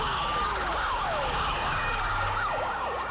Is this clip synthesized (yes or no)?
yes